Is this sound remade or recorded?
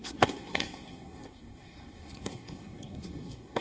remade